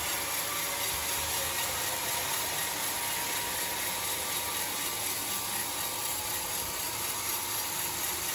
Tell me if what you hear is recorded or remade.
recorded